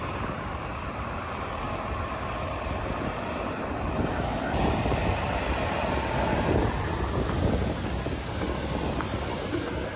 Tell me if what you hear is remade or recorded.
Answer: recorded